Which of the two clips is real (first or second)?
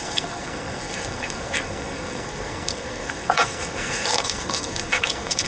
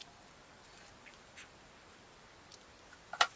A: second